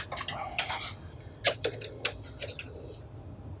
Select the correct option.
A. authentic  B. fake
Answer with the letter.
A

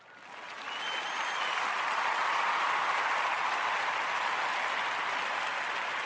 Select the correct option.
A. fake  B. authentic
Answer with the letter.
B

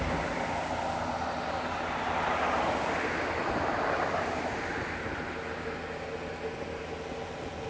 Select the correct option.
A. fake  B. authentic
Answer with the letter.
B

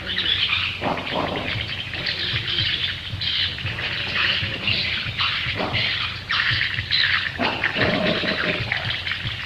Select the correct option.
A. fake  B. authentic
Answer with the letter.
A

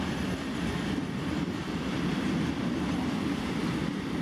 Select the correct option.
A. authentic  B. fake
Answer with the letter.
A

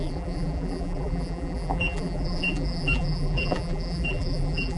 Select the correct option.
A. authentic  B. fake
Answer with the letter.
B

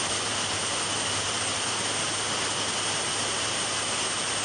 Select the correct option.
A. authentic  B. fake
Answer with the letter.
A